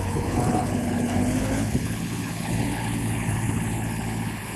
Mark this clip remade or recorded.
remade